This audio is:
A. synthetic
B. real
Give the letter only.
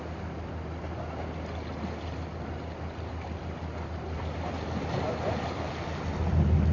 B